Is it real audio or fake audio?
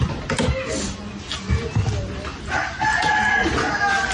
real